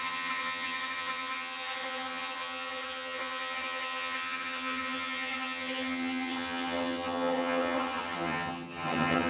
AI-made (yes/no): yes